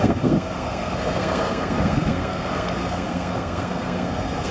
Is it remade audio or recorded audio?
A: remade